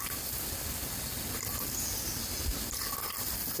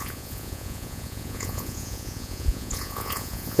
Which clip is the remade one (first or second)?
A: second